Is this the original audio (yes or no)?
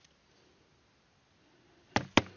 yes